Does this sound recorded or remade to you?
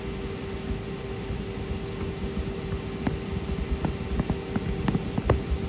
recorded